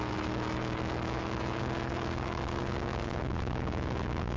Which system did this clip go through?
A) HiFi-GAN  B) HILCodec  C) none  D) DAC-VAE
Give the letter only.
D